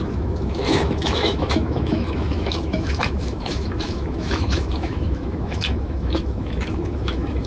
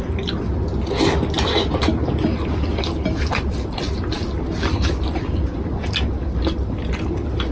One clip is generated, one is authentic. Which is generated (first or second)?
first